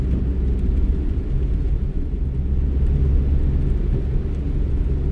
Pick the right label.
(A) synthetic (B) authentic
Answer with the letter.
B